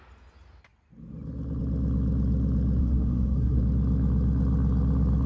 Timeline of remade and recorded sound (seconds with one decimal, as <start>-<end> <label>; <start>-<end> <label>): 0.0-2.8 recorded; 2.8-3.6 remade; 3.6-5.3 recorded